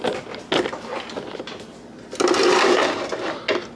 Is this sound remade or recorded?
recorded